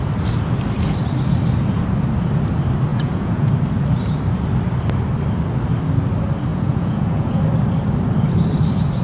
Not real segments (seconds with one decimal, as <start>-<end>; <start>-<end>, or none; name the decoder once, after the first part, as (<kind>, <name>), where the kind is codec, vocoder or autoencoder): 2.9-3.5 (vocoder, Vocos); 6.5-7.4